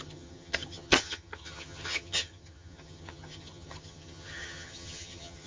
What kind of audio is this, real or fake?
fake